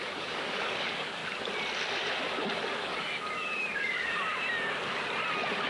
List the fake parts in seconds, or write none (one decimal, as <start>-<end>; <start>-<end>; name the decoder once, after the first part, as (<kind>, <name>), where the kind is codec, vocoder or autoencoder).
0.0-1.2 (codec, DAC); 2.7-4.3